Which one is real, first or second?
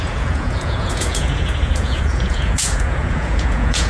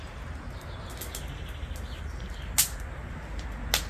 second